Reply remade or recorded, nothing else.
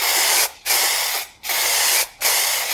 recorded